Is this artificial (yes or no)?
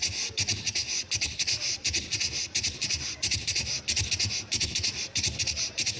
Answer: no